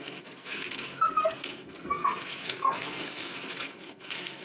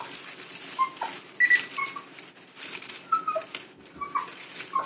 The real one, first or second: second